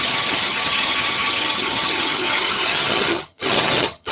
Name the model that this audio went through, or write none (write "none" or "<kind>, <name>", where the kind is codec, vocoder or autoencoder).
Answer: vocoder, HiFi-GAN